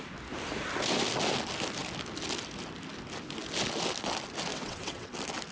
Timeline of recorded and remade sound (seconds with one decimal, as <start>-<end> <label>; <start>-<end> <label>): 0.0-4.5 recorded; 4.5-5.1 remade; 5.1-5.5 recorded